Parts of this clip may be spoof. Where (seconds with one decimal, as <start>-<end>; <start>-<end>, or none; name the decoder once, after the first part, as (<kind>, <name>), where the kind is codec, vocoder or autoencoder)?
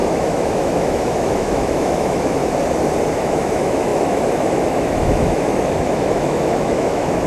0.0-2.4 (autoencoder, DAC-VAE); 3.1-7.3